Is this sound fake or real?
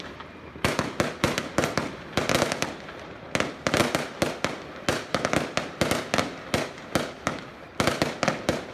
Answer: real